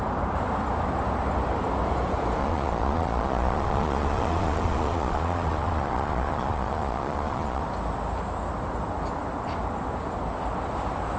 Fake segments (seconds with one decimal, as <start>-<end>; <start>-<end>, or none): 2.4-7.6